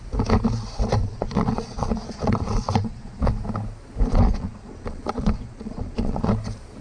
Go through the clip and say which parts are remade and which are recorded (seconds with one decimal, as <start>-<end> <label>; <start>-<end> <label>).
0.0-1.0 recorded; 1.0-3.3 remade; 3.3-4.1 recorded; 4.1-6.3 remade; 6.3-6.8 recorded